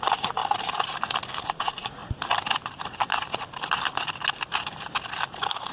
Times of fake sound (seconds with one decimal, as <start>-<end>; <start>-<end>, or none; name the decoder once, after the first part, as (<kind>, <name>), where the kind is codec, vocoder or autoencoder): 0.0-0.4 (vocoder, Vocos); 1.5-2.0